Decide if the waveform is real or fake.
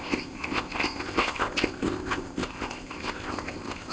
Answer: fake